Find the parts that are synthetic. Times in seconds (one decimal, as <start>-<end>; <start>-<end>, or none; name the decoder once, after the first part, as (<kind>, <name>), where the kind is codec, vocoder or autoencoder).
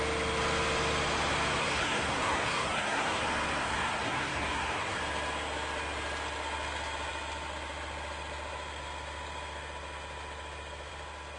1.6-3.2 (codec, SNAC); 3.6-5.0